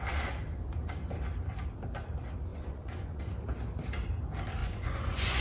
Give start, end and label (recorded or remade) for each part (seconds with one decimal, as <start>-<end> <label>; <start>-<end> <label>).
0.0-2.5 recorded; 2.5-3.2 remade; 3.2-4.6 recorded; 4.6-5.4 remade